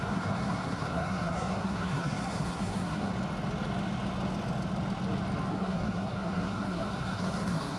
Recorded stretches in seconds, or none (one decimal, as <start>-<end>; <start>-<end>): 3.1-5.5